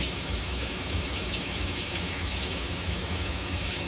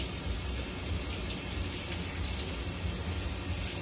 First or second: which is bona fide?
second